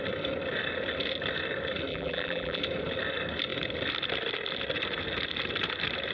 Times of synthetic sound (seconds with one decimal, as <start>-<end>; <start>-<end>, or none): 1.9-2.6

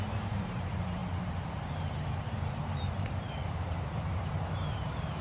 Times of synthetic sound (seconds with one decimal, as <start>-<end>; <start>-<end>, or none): 0.0-1.0; 2.2-5.2